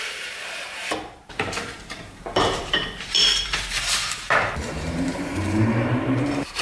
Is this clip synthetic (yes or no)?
yes